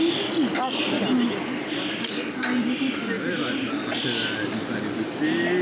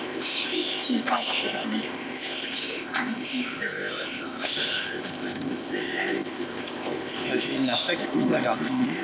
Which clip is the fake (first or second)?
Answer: second